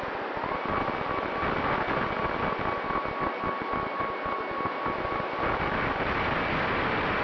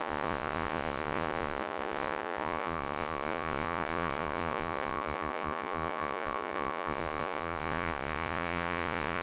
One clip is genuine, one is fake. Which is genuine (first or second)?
first